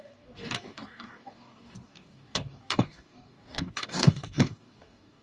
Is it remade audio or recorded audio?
remade